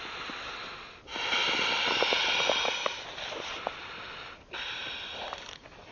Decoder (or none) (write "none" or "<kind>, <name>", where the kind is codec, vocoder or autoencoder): none